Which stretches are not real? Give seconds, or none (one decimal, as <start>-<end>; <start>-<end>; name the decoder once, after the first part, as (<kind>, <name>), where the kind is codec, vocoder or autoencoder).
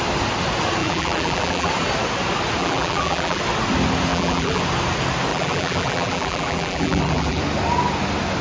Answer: 0.8-1.7 (vocoder, BigVGAN v2); 2.6-3.4; 4.1-4.6; 5.3-7.4